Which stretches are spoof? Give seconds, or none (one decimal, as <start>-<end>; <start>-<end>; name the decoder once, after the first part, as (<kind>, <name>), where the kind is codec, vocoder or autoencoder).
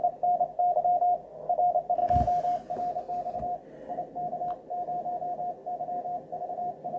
none